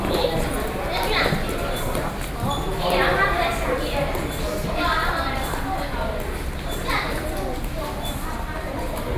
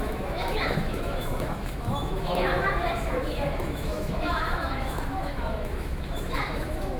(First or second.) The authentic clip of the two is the first